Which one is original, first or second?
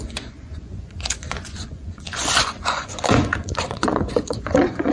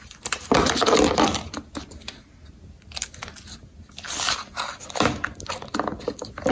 second